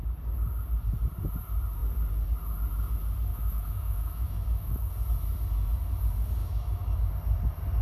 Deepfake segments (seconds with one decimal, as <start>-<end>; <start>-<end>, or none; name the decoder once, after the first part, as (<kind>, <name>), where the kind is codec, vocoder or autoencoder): 3.3-4.9 (autoencoder, DAC-VAE); 6.4-7.1